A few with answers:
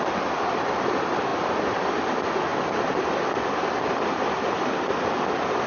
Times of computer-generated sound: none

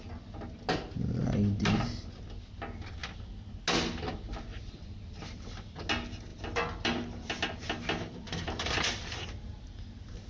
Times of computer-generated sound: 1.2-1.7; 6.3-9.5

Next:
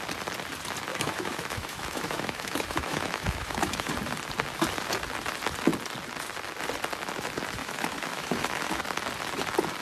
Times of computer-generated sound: 0.9-3.9; 7.6-8.8

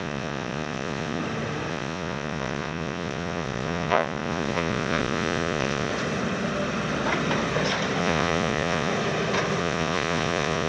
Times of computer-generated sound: 0.0-1.2; 1.7-5.9; 8.0-8.9; 9.6-10.7

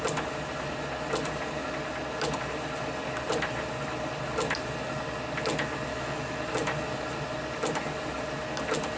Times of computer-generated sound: 5.9-6.5

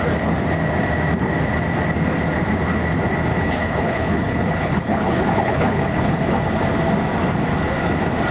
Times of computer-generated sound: 3.3-6.2

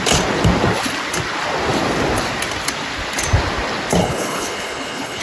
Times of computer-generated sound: 4.0-5.2

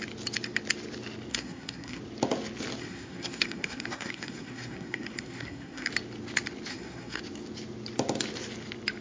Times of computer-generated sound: 1.3-2.0; 2.8-5.9; 6.7-7.2